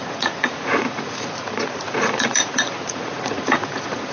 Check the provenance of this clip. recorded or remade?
remade